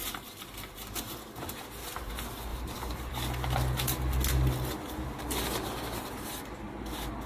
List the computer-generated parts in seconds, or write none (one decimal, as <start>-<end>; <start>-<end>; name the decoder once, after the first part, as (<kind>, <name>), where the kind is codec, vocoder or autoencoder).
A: 0.0-2.1 (vocoder, BigVGAN v2); 2.5-3.1